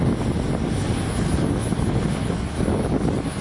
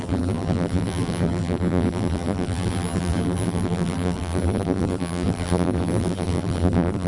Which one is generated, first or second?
second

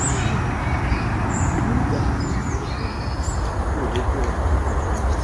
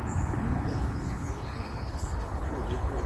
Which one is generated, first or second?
second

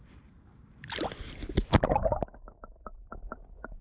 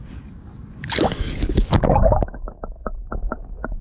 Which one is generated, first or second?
second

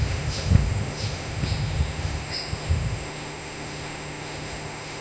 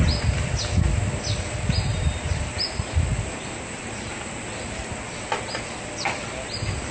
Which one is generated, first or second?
first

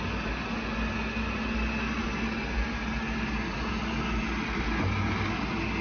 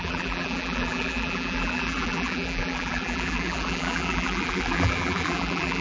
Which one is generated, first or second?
second